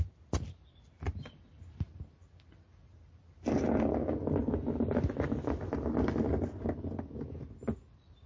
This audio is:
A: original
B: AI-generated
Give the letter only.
A